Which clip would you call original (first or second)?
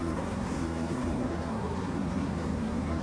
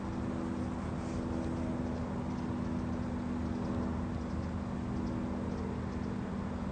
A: second